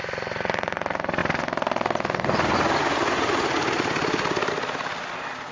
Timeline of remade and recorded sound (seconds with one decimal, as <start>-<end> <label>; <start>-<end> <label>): 0.0-5.5 recorded